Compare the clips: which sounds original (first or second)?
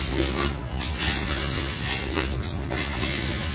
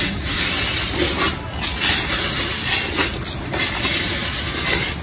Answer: second